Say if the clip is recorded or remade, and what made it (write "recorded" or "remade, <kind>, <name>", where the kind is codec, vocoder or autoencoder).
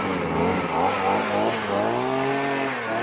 recorded